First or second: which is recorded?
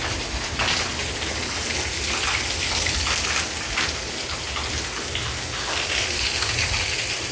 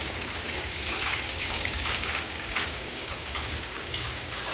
first